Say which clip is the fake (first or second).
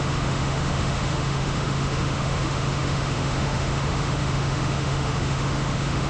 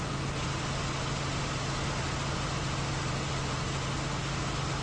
first